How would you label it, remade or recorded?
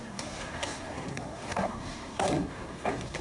remade